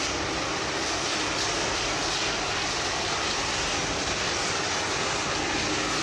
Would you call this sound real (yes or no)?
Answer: no